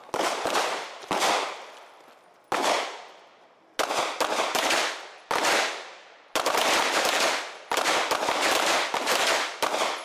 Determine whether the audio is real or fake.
real